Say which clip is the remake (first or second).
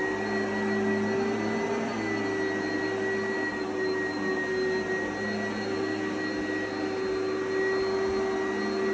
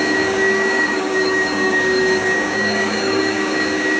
second